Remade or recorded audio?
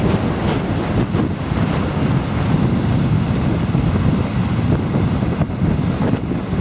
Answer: recorded